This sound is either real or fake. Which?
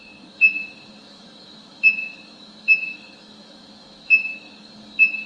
fake